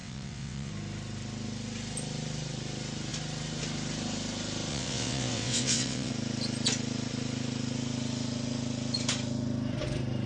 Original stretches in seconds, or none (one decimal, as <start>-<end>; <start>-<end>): 0.7-4.7; 6.1-10.3